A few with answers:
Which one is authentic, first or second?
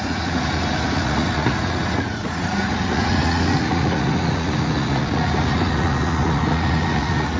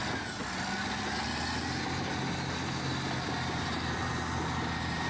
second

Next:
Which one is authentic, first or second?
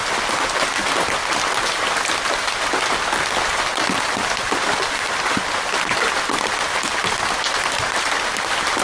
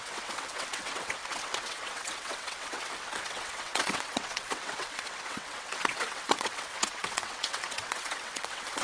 first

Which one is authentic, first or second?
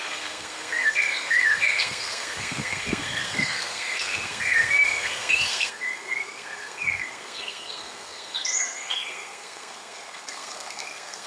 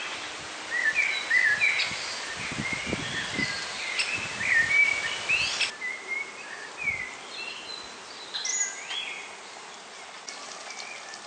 second